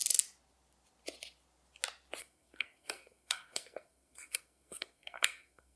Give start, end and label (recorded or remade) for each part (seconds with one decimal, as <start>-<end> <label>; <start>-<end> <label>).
0.0-2.2 recorded; 2.2-5.8 remade